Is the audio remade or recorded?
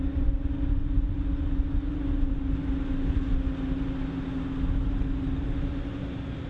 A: recorded